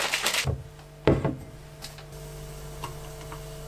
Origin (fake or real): real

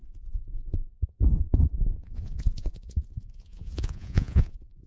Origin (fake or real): fake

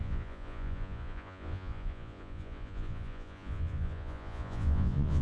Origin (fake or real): fake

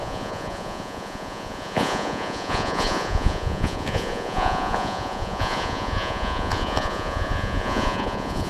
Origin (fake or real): fake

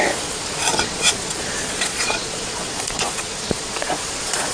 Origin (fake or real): fake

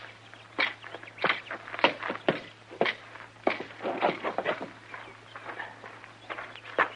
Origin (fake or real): real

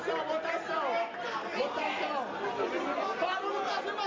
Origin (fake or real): real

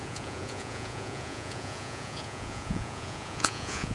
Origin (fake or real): fake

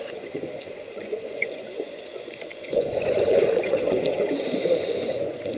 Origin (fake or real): fake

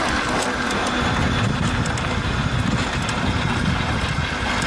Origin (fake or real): real